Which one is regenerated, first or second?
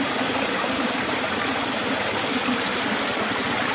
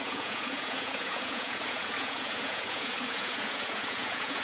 second